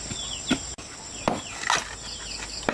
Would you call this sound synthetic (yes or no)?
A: no